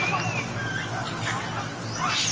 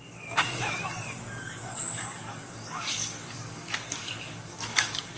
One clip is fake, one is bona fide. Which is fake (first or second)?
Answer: second